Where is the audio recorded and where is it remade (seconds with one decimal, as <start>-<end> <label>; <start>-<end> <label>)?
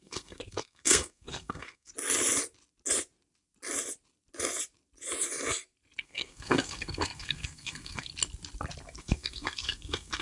0.0-1.9 remade; 1.9-6.0 recorded; 6.0-8.1 remade; 8.1-9.0 recorded; 9.0-10.2 remade